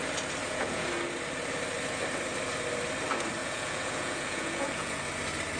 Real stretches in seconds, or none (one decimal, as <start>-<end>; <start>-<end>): 0.0-0.4; 0.9-3.4; 5.0-5.6